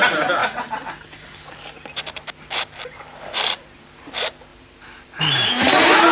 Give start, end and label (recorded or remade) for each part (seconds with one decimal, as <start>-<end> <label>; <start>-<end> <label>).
0.0-4.5 recorded; 4.5-5.5 remade; 5.5-6.1 recorded